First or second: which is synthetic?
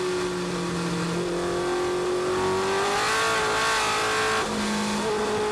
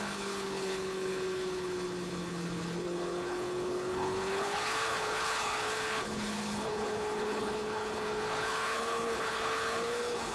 second